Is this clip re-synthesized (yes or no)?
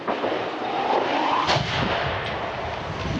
no